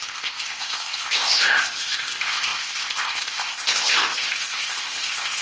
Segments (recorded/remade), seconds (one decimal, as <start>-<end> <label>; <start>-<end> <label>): 0.0-5.4 remade